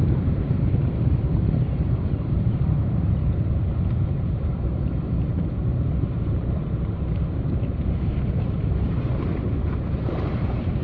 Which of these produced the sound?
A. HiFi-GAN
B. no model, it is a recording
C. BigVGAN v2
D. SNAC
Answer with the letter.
C